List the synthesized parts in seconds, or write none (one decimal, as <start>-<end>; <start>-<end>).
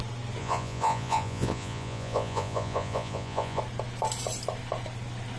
0.4-3.6